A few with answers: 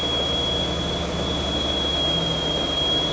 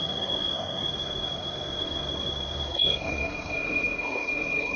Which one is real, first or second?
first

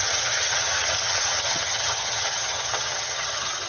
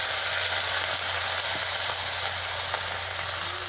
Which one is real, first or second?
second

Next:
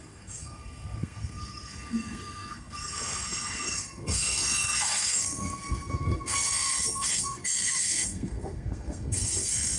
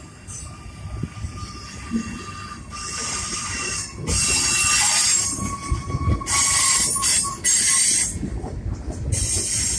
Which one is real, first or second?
second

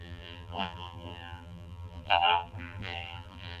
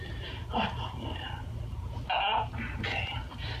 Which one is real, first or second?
second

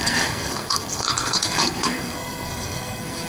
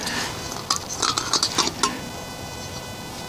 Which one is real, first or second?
second